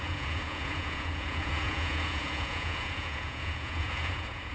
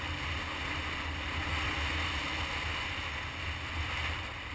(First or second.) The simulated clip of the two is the first